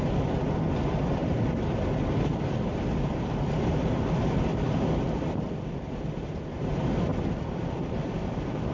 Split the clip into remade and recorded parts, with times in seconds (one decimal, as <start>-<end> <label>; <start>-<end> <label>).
0.0-8.7 recorded